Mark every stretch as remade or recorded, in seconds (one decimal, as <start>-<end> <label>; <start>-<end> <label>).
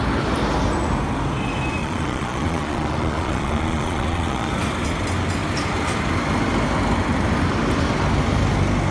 0.0-1.8 recorded; 1.8-4.5 remade; 4.5-8.9 recorded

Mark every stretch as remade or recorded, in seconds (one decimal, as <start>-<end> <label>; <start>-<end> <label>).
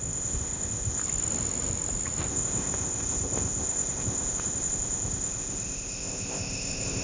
0.0-1.0 remade; 1.0-2.3 recorded; 2.3-7.0 remade